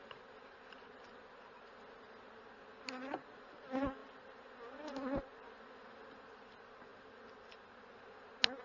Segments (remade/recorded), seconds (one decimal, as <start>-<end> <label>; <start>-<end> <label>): 0.0-8.6 recorded

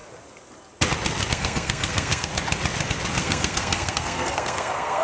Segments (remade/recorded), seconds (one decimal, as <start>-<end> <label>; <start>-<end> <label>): 0.0-1.3 recorded; 1.3-2.3 remade; 2.3-3.2 recorded; 3.2-5.0 remade

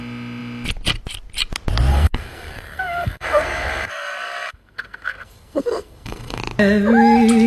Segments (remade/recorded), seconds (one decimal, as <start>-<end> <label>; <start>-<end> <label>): 0.0-1.9 recorded; 1.9-6.4 remade; 6.4-7.5 recorded

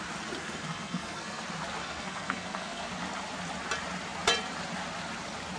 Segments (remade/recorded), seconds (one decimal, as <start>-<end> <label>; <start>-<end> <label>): 0.0-0.4 recorded; 0.4-1.4 remade; 1.4-1.8 recorded; 1.8-2.9 remade; 2.9-5.6 recorded